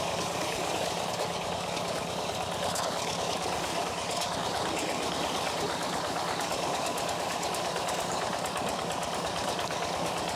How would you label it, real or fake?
fake